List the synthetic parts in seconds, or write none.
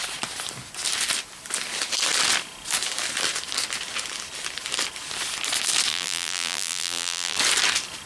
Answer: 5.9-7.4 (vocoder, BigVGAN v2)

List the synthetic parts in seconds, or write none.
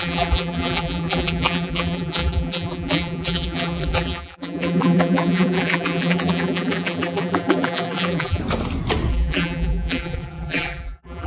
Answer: 0.0-8.4 (vocoder, BigVGAN v2); 9.1-11.3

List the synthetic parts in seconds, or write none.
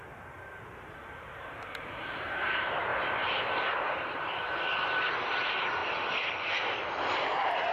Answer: 0.0-2.9 (vocoder, BigVGAN v2); 4.2-5.8; 6.3-7.7